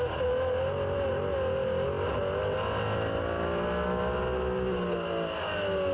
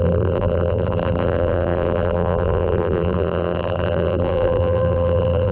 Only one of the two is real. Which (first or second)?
first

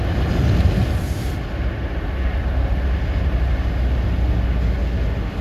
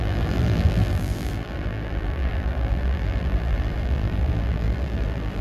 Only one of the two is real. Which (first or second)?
first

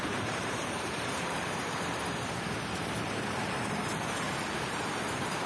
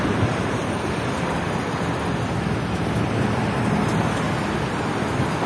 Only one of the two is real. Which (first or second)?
second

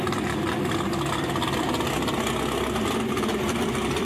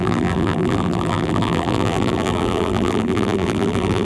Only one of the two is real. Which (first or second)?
first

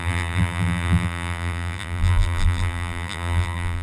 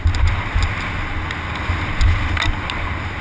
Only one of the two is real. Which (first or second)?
second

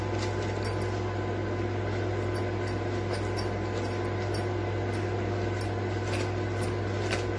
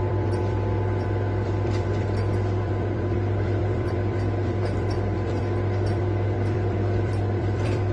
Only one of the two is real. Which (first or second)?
first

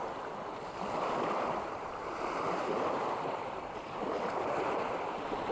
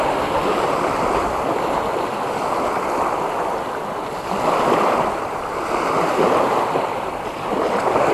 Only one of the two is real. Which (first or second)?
second